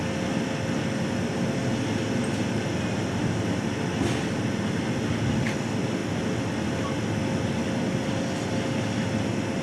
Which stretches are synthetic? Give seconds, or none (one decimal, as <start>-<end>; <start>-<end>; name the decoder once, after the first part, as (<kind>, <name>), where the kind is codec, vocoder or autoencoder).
none